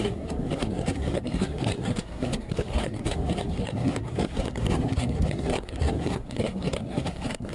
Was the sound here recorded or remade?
remade